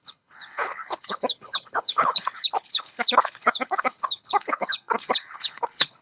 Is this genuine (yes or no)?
no